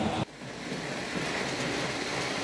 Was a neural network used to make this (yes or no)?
no